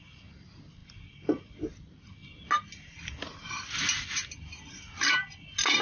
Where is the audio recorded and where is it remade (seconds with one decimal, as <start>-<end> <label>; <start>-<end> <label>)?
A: 0.0-5.8 recorded